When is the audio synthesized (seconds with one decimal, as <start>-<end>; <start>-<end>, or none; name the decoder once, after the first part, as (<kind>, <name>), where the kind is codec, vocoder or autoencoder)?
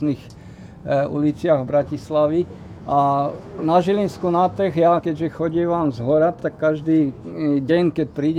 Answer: 0.8-5.0 (autoencoder, DAC-VAE); 6.4-7.7